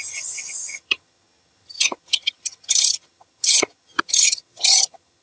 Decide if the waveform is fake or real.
fake